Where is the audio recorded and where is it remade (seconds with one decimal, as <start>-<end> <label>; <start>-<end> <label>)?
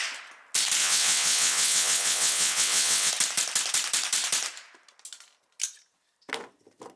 0.0-0.8 recorded; 0.8-3.1 remade; 3.1-7.0 recorded